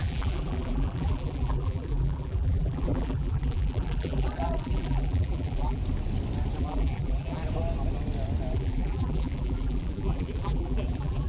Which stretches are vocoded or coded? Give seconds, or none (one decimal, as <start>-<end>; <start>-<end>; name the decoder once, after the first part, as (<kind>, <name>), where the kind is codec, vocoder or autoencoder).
0.0-5.8 (vocoder, BigVGAN v2); 6.6-7.4; 8.5-11.3